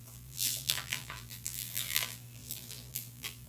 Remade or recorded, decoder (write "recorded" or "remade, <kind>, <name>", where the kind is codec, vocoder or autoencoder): remade, vocoder, BigVGAN v2